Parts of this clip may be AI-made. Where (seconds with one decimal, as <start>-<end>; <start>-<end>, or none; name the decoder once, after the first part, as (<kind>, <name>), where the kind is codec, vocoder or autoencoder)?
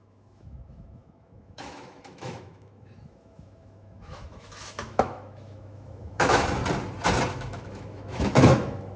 0.0-6.6 (autoencoder, DAC-VAE); 7.3-9.0